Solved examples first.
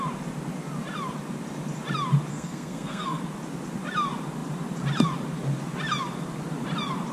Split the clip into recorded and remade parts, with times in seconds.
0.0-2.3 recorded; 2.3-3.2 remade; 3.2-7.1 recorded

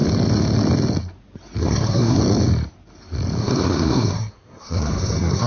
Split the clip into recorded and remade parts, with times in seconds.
0.0-1.6 recorded; 1.6-2.2 remade; 2.2-3.4 recorded; 3.4-5.5 remade

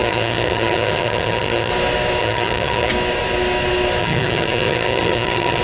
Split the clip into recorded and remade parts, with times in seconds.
0.0-1.7 remade; 1.7-2.2 recorded; 2.2-2.9 remade; 2.9-4.0 recorded; 4.0-5.6 remade

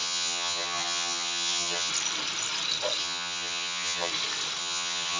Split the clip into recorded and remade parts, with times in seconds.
0.0-1.9 remade; 1.9-3.0 recorded; 3.0-4.1 remade; 4.1-4.6 recorded; 4.6-5.2 remade

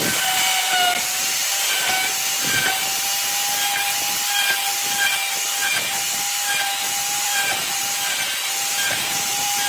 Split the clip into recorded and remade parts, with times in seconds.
0.0-1.9 remade; 1.9-6.8 recorded; 6.8-7.8 remade; 7.8-8.7 recorded; 8.7-9.7 remade

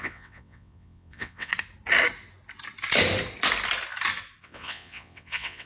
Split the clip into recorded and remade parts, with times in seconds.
0.0-1.5 remade; 1.5-4.4 recorded; 4.4-5.7 remade

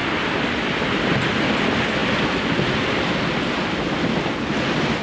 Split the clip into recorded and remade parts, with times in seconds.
0.0-5.0 recorded